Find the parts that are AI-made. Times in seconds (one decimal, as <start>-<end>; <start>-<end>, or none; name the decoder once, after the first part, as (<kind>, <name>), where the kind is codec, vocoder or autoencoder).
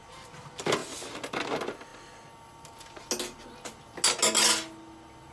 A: none